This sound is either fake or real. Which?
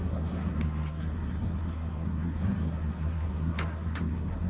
fake